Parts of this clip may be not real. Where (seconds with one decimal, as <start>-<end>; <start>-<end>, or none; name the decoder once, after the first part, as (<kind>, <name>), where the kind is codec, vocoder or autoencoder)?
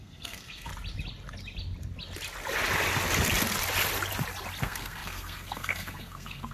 0.0-0.7 (codec, SNAC); 4.6-6.5